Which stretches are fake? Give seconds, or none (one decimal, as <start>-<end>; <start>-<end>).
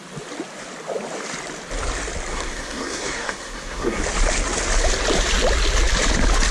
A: 2.3-4.0